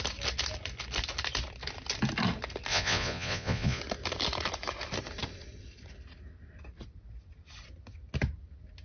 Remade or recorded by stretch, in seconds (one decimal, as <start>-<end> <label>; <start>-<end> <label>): 0.0-2.7 recorded; 2.7-3.8 remade; 3.8-8.8 recorded